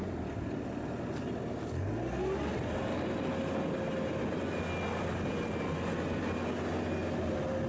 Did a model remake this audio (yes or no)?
no